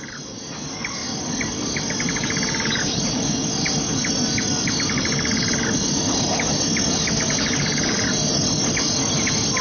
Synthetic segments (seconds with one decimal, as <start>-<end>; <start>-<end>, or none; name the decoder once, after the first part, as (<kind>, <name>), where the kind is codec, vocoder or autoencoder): none